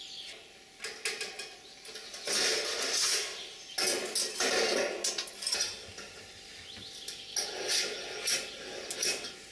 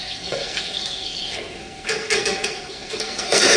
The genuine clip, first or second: first